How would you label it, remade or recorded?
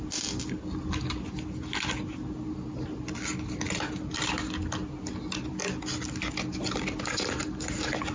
recorded